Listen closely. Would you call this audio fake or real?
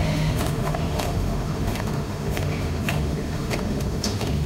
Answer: fake